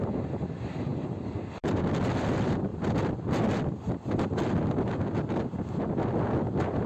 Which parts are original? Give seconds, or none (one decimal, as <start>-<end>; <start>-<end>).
0.0-6.9